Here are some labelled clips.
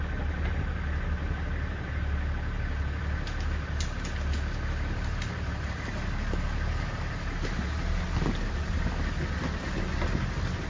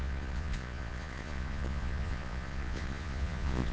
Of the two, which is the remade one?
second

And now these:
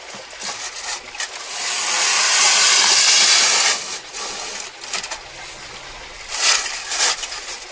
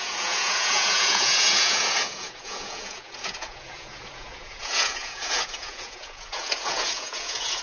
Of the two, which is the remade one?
second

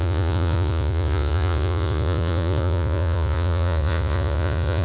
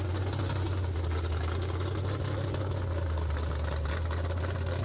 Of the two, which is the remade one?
first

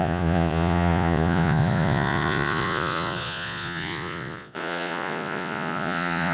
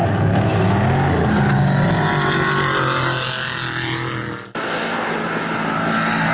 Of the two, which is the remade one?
first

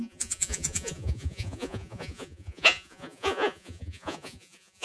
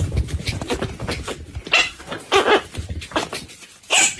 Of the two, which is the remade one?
first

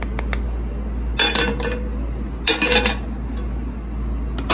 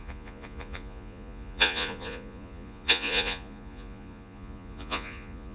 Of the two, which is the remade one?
second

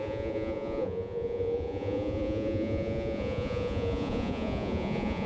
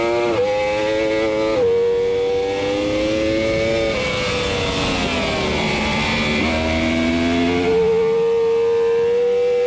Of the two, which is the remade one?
first